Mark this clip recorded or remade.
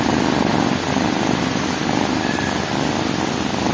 recorded